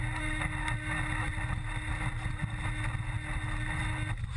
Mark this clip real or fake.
real